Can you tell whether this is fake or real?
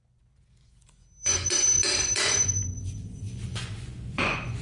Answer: fake